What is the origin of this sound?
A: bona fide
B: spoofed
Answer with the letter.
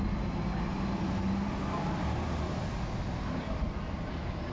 A